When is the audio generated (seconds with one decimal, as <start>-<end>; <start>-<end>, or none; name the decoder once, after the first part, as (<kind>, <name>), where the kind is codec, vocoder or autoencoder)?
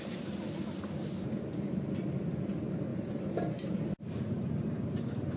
none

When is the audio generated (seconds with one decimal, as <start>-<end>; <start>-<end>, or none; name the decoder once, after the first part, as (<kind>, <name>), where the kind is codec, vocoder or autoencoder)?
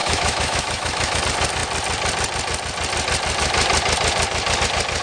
0.0-1.2 (autoencoder, DAC-VAE)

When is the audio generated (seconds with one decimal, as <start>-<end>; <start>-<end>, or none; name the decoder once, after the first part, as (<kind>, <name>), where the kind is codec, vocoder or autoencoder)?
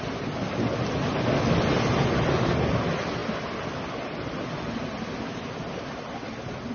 none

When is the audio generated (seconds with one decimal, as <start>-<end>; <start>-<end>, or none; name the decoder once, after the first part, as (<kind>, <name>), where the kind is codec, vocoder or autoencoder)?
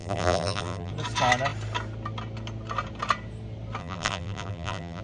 0.0-0.9 (vocoder, BigVGAN v2); 3.8-5.0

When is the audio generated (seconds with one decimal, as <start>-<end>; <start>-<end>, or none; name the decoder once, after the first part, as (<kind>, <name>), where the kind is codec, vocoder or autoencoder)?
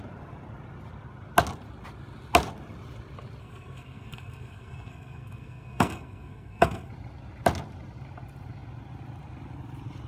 3.4-6.9 (codec, SNAC)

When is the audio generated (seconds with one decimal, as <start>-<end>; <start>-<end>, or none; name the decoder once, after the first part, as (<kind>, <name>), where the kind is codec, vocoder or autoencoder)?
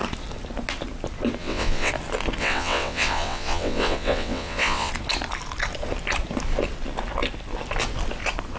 1.4-1.9 (vocoder, WaveNeXt); 2.4-4.9